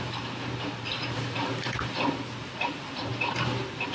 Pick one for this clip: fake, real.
fake